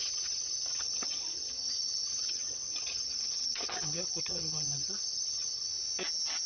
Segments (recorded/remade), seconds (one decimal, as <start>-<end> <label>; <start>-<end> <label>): 0.0-5.7 remade; 5.7-6.5 recorded